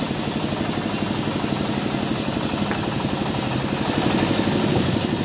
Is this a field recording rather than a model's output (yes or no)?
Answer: yes